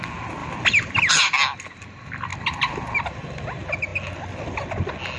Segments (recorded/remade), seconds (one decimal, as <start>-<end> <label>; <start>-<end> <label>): 0.0-0.4 recorded; 0.4-1.2 remade; 1.2-5.2 recorded